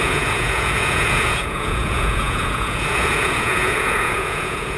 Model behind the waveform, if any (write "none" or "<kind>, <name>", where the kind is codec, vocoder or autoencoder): vocoder, Vocos